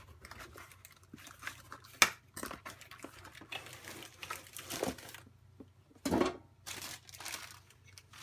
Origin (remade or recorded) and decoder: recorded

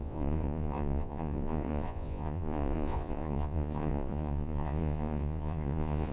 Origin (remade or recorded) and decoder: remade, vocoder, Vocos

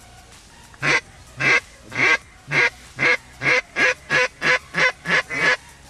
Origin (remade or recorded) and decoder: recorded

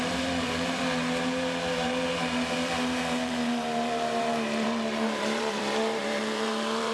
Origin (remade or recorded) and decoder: remade, vocoder, BigVGAN v2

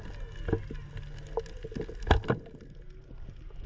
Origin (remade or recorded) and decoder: recorded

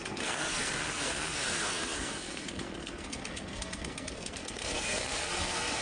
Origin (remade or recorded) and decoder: remade, codec, SNAC